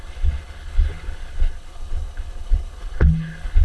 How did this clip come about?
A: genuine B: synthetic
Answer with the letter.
B